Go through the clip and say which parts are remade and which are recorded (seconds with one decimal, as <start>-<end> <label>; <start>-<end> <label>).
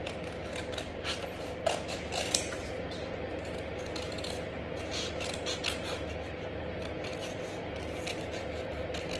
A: 0.0-9.2 recorded